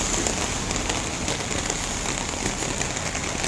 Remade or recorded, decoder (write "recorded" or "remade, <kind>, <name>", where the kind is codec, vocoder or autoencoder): recorded